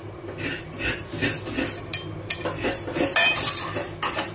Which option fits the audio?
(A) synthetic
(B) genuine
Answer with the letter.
B